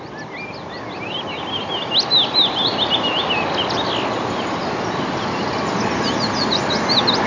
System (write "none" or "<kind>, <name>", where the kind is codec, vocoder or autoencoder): none